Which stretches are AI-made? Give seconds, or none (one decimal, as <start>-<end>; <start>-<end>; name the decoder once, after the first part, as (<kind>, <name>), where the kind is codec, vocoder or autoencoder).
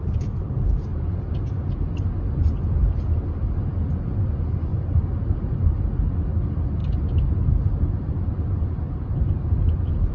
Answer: 4.7-5.5 (vocoder, BigVGAN v2)